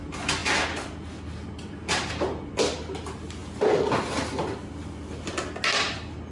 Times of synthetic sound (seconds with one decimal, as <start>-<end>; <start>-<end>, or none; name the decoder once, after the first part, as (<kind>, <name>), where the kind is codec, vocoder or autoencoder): none